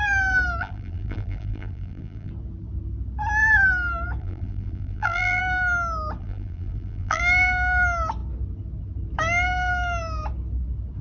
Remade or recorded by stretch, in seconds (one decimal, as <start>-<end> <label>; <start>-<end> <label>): 0.0-0.6 recorded; 0.6-2.3 remade; 2.3-4.2 recorded; 4.2-5.4 remade; 5.4-6.2 recorded; 6.2-7.2 remade; 7.2-11.0 recorded